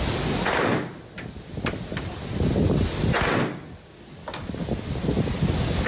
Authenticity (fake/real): real